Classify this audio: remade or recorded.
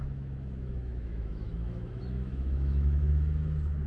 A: remade